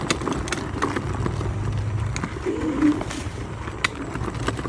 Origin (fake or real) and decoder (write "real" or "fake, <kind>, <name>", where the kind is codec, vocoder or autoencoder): real